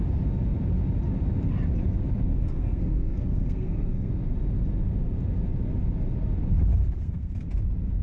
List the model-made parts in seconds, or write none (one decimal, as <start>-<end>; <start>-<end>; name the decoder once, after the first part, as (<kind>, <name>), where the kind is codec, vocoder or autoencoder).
2.3-4.1 (codec, SNAC); 6.7-7.5